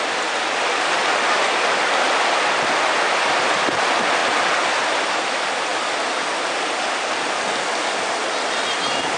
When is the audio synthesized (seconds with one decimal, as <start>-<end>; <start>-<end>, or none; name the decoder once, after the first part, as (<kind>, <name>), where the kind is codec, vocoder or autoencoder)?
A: none